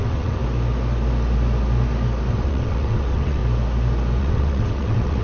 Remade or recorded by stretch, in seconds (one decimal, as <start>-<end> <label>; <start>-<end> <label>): 0.0-0.4 remade; 0.4-2.3 recorded; 2.3-3.4 remade; 3.4-4.2 recorded; 4.2-5.2 remade